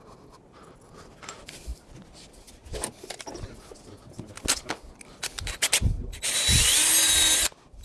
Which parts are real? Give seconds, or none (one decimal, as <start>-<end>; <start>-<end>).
0.0-7.8